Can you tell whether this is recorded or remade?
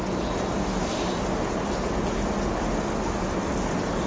recorded